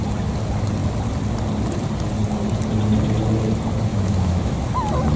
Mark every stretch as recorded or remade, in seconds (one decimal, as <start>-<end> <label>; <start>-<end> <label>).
0.0-3.9 recorded; 3.9-4.6 remade; 4.6-5.2 recorded